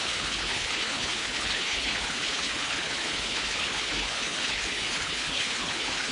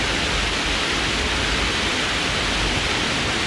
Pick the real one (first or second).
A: second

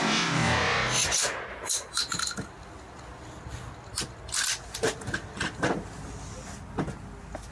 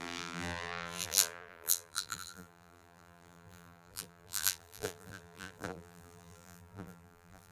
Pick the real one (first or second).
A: first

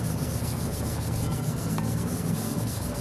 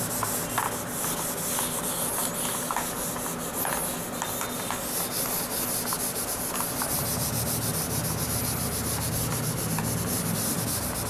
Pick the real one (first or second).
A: second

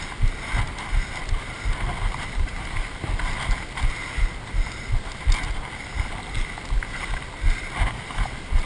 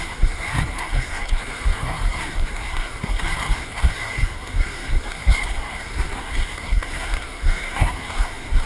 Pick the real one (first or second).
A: first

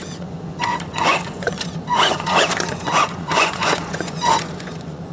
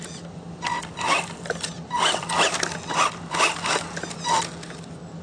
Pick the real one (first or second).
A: second